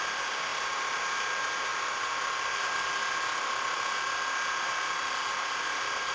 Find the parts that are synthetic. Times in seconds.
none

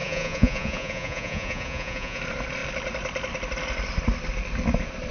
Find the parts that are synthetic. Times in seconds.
0.0-2.2 (vocoder, Vocos)